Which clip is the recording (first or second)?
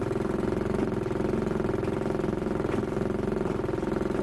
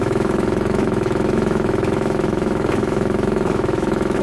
first